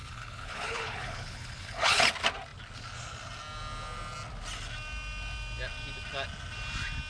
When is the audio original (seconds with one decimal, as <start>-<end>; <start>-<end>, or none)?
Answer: 2.0-7.1